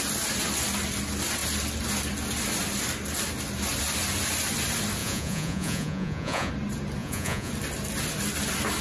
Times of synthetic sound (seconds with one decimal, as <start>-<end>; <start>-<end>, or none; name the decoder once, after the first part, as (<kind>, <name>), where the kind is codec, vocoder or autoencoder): 5.0-6.5 (vocoder, Vocos); 7.0-7.5